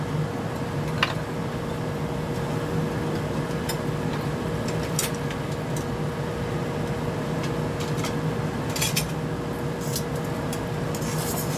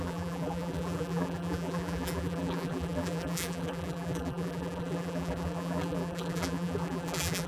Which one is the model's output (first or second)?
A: second